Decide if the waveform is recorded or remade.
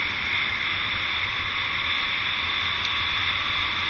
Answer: recorded